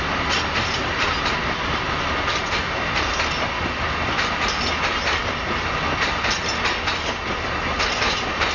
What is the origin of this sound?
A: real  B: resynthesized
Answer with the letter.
A